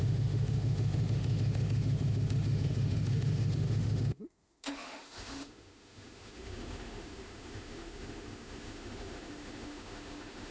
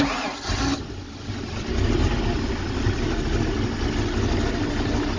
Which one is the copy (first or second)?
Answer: first